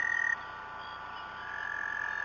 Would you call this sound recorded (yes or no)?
yes